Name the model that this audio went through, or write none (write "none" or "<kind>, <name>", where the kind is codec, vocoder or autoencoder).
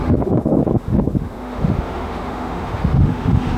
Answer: autoencoder, DAC-VAE